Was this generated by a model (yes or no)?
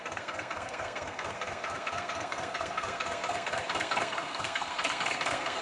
yes